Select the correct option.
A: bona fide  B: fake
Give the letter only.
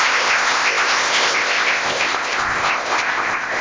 B